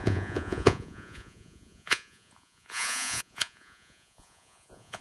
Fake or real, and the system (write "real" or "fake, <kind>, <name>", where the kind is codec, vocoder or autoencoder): fake, vocoder, Vocos